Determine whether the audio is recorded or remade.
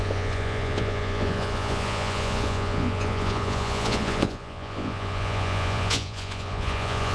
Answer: remade